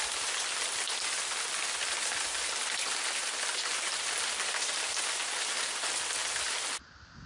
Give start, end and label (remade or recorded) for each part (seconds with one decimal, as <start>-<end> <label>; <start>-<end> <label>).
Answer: 0.0-7.3 recorded